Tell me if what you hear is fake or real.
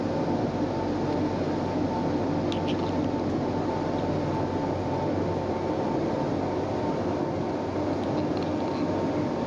real